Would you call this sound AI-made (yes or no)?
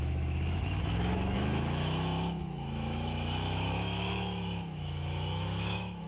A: yes